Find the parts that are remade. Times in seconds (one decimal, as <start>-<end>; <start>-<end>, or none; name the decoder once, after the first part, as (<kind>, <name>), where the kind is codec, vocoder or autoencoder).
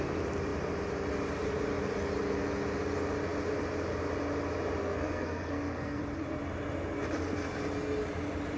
4.8-6.0 (codec, SNAC)